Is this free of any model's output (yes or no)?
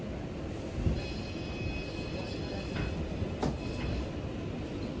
yes